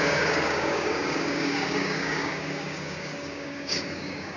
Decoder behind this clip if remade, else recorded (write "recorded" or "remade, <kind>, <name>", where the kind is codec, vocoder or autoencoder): remade, codec, DAC